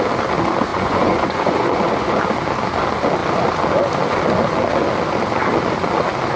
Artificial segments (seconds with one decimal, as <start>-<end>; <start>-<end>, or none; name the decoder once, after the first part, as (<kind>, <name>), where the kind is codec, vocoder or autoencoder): 0.7-2.2 (vocoder, Vocos)